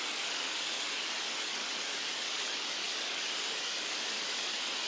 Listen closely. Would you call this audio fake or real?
fake